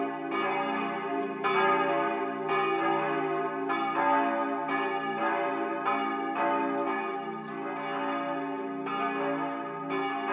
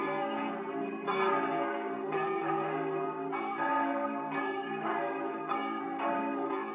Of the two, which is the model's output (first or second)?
second